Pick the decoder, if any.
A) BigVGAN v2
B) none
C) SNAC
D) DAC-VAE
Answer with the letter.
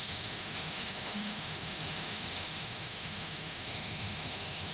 D